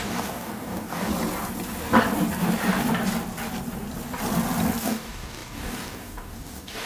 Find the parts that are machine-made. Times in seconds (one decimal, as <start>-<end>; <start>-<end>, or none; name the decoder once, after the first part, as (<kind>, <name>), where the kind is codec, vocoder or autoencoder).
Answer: 0.0-1.1 (codec, DAC); 4.8-6.9

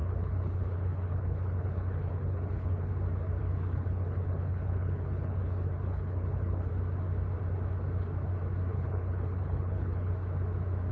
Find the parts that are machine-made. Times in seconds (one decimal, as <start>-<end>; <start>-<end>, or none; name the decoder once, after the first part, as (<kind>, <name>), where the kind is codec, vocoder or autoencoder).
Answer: 0.0-2.9 (codec, HILCodec); 3.4-6.7; 8.7-10.1

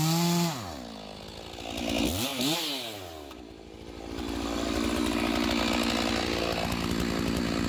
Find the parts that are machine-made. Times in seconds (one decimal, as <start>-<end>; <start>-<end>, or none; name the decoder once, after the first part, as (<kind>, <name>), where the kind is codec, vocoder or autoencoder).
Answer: none

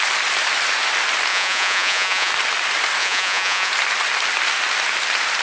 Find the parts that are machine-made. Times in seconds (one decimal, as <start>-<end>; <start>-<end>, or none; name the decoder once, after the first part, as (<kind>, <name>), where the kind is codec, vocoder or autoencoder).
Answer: 1.3-2.3 (vocoder, Vocos); 3.0-3.7

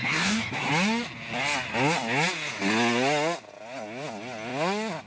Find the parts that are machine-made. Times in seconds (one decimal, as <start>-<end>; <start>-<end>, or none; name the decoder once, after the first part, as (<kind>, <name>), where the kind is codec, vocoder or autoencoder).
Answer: 0.0-0.7 (codec, SNAC)

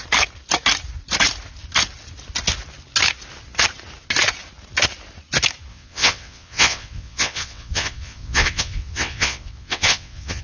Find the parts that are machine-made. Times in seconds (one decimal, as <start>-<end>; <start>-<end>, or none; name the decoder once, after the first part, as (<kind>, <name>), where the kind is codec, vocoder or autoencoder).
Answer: 5.7-10.4 (vocoder, WaveNeXt)

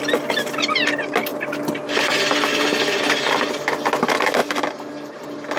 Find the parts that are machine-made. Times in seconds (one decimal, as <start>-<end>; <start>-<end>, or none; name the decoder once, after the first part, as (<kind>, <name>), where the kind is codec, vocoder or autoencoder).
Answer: none